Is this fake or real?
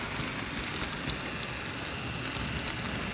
real